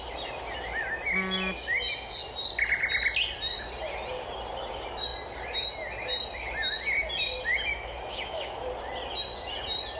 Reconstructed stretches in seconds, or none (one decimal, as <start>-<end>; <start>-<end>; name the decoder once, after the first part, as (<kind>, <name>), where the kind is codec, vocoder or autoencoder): 7.7-8.7 (autoencoder, DAC-VAE)